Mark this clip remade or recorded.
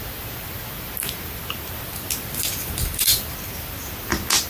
recorded